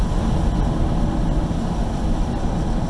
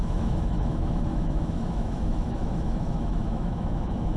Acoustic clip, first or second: first